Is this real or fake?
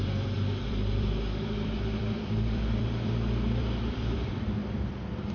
fake